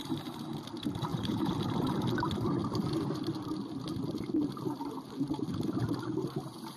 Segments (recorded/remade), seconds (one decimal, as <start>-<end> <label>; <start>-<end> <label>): 0.0-1.1 recorded; 1.1-2.0 remade; 2.0-6.8 recorded